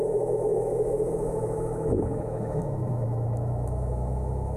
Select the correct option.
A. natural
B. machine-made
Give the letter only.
B